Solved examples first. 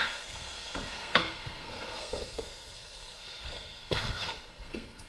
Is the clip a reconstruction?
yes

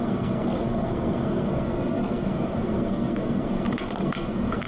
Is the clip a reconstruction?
yes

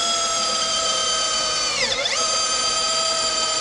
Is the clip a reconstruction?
no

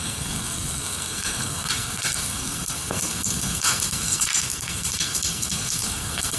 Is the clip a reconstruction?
yes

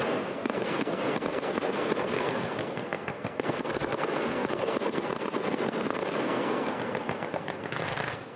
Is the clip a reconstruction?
yes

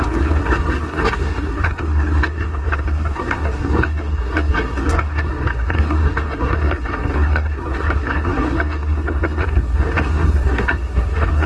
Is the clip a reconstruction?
yes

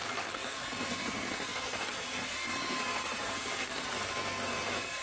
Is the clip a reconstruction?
yes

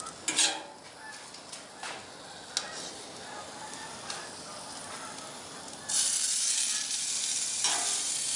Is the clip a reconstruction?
no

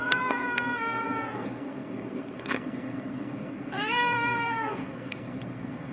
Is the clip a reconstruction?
yes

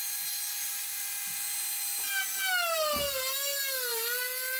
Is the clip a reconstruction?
no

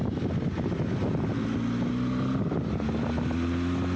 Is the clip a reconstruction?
no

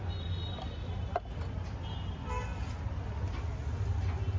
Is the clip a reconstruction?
no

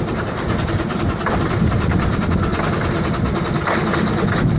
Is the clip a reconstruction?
no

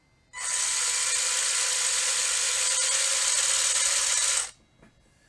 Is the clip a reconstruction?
no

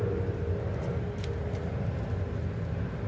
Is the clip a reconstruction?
no